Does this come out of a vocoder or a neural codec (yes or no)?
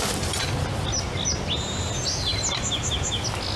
no